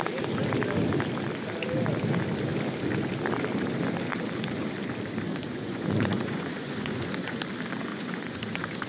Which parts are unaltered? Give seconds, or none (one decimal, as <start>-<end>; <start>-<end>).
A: 0.0-5.3; 7.4-7.9